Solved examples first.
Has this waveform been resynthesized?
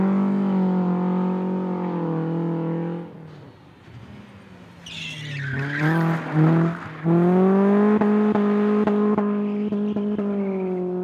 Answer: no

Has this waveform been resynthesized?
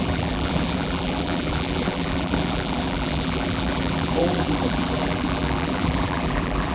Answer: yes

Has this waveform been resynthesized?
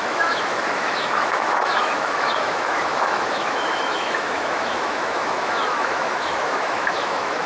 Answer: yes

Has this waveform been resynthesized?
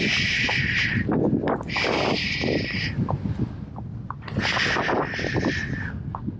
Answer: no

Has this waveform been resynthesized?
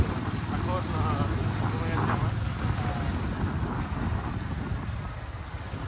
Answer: no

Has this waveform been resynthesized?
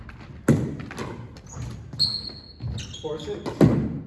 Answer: no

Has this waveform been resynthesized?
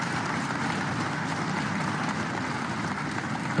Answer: no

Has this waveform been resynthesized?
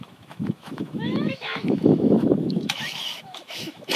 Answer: yes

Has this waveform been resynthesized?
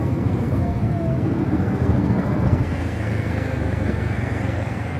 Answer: yes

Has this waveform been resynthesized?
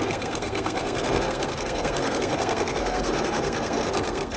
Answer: yes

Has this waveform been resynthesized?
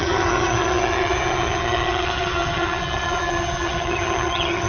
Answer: yes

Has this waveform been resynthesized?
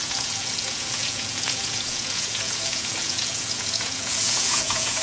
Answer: yes